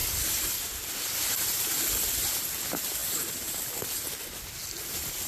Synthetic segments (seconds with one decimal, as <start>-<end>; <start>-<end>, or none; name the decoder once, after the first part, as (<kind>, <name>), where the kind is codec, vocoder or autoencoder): 0.0-0.9 (vocoder, BigVGAN v2)